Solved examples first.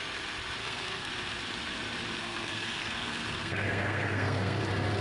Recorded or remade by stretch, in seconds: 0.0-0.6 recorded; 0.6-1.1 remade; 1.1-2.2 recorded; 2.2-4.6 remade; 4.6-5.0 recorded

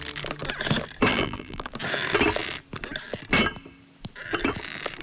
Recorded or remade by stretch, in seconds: 0.0-1.1 recorded; 1.1-1.7 remade; 1.7-5.0 recorded

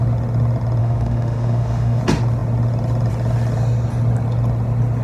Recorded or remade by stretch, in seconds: 0.0-0.8 recorded; 0.8-2.0 remade; 2.0-5.0 recorded

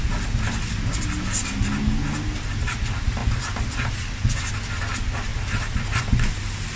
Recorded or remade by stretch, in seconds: 0.0-6.8 recorded

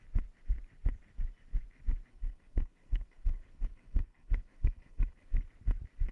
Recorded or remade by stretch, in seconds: 0.0-2.1 recorded; 2.1-5.4 remade; 5.4-6.1 recorded

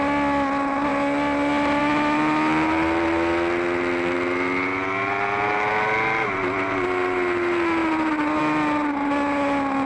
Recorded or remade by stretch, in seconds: 0.0-9.9 recorded

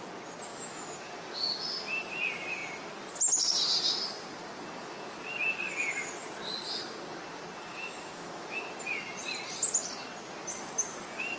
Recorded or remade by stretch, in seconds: 0.0-0.5 recorded; 0.5-1.1 remade; 1.1-7.7 recorded; 7.7-8.7 remade; 8.7-11.4 recorded

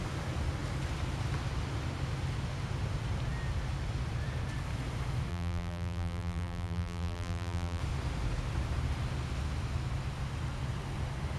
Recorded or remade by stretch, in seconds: 0.0-5.3 recorded; 5.3-7.8 remade; 7.8-11.4 recorded